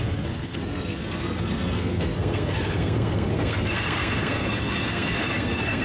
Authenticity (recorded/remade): remade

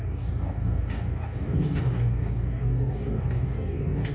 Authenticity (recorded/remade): remade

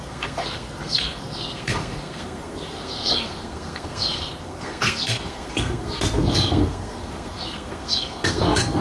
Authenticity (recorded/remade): remade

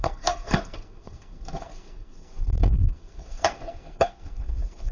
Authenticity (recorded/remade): remade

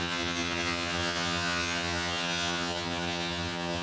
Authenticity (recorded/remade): remade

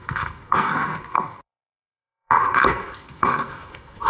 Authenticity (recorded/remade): remade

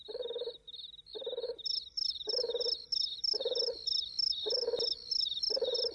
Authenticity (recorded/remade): recorded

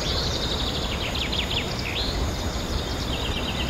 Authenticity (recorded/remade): recorded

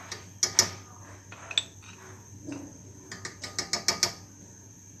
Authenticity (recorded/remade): recorded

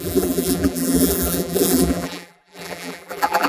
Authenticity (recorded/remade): remade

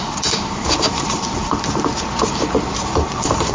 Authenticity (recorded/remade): remade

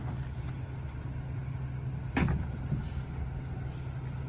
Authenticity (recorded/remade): recorded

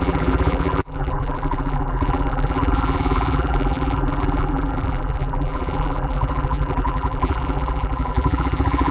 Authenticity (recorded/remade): remade